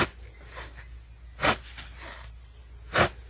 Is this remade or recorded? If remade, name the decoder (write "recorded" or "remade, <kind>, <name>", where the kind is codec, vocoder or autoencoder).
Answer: recorded